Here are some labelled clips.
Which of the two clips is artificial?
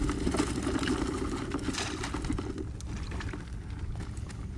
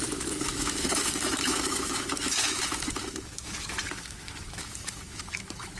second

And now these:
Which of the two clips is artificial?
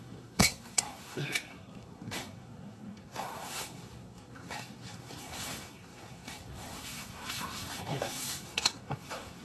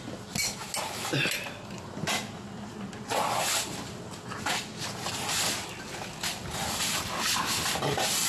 first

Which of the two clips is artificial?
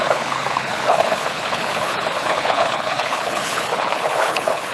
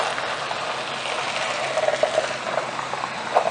first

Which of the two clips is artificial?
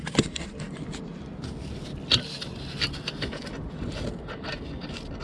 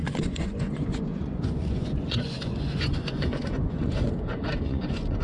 second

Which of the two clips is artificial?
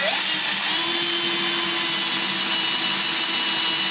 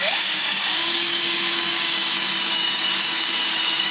second